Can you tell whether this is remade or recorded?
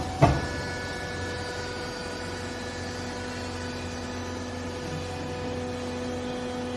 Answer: recorded